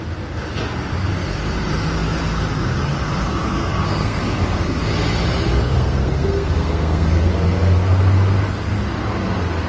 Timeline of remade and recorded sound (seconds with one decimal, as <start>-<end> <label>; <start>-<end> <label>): 0.0-3.6 recorded; 3.6-4.2 remade; 4.2-5.7 recorded; 5.7-7.3 remade; 7.3-9.7 recorded

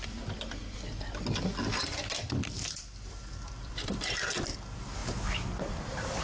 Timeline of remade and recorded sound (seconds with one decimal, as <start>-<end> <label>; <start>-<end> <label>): 0.0-0.6 remade; 0.6-1.8 recorded; 1.8-5.0 remade; 5.0-5.6 recorded; 5.6-6.2 remade

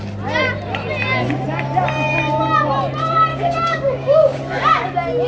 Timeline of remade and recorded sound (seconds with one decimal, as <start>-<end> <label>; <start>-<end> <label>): 0.0-3.3 recorded; 3.3-4.4 remade; 4.4-5.3 recorded

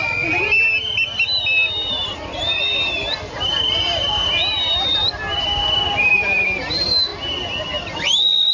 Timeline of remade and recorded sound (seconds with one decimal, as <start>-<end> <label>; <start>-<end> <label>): 0.0-8.5 recorded

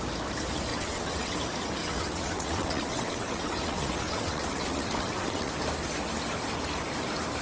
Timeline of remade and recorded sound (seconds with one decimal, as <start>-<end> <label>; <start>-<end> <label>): 0.0-0.7 recorded; 0.7-1.4 remade; 1.4-1.8 recorded; 1.8-5.5 remade; 5.5-7.4 recorded

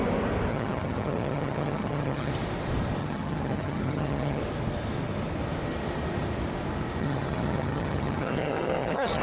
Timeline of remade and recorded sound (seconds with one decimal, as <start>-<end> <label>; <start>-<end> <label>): 0.0-0.5 recorded; 0.5-2.3 remade; 2.3-3.0 recorded; 3.0-4.4 remade; 4.4-7.0 recorded; 7.0-9.2 remade

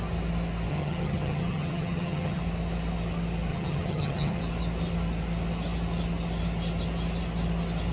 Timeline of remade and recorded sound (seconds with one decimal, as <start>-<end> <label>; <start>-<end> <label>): 0.0-0.7 recorded; 0.7-2.4 remade; 2.4-3.5 recorded; 3.5-4.4 remade; 4.4-7.9 recorded

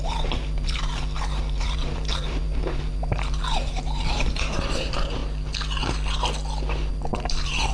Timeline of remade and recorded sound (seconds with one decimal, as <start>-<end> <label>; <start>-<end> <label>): 0.0-5.2 remade; 5.2-6.9 recorded; 6.9-7.7 remade